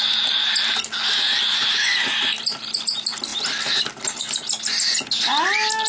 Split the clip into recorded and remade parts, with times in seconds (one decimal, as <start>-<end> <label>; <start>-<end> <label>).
0.0-5.9 recorded